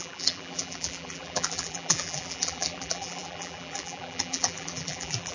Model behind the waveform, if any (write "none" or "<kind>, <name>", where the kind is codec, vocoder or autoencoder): vocoder, BigVGAN v2